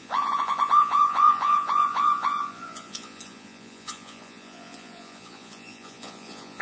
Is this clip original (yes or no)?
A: no